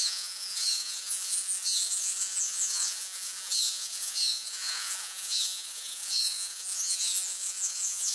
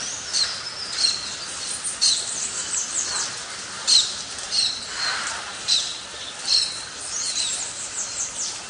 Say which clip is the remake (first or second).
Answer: first